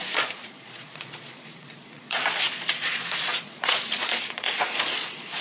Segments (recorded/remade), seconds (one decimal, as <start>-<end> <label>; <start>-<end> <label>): 0.0-5.4 remade